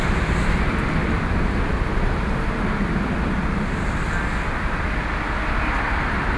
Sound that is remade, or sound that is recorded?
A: recorded